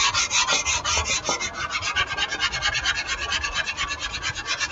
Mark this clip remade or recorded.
recorded